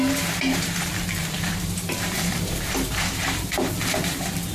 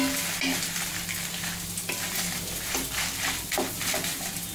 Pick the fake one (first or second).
first